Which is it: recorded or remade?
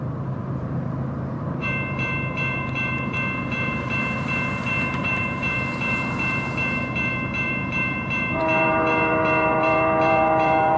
remade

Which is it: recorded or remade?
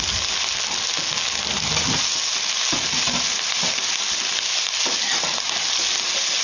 recorded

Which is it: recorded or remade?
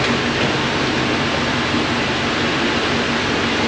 recorded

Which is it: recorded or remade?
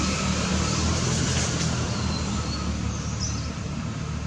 recorded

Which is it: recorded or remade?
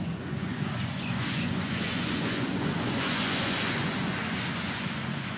remade